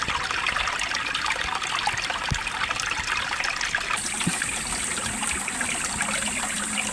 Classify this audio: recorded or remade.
recorded